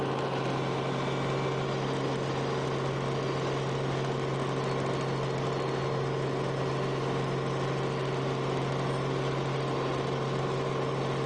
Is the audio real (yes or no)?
yes